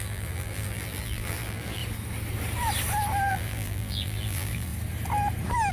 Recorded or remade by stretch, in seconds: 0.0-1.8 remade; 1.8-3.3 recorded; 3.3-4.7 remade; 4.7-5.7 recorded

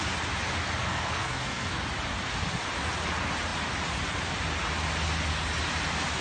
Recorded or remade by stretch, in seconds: 0.0-0.8 recorded; 0.8-1.8 remade; 1.8-6.2 recorded

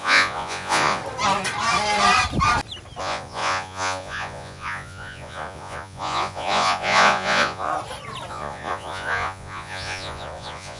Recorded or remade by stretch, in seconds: 0.0-1.0 remade; 1.0-3.0 recorded; 3.0-7.7 remade; 7.7-8.3 recorded; 8.3-10.8 remade

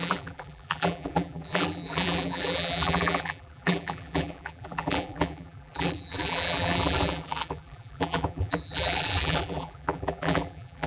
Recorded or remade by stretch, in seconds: 0.0-10.9 remade

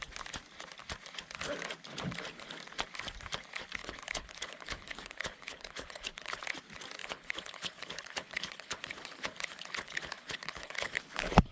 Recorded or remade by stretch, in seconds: 0.0-3.8 recorded; 3.8-6.4 remade; 6.4-7.0 recorded; 7.0-11.5 remade

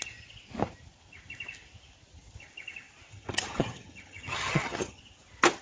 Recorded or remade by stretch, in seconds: 0.0-3.1 recorded; 3.1-5.0 remade; 5.0-5.6 recorded

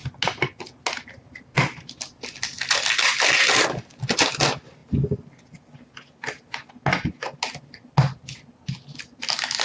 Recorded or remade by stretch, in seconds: 0.0-9.6 recorded